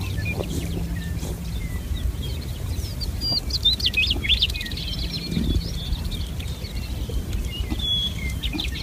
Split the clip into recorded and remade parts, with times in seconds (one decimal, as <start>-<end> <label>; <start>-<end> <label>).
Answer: 0.0-0.6 remade; 0.6-1.5 recorded; 1.5-2.9 remade; 2.9-7.1 recorded; 7.1-8.8 remade